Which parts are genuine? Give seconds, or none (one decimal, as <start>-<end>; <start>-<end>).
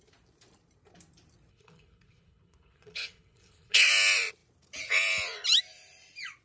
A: 0.0-1.5; 3.9-6.4